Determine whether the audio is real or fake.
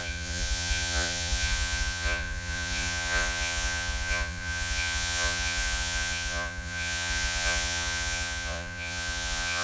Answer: fake